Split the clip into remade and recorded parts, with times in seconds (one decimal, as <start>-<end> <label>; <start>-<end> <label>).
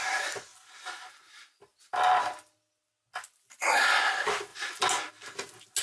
0.0-5.8 recorded